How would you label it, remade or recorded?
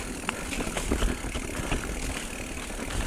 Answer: recorded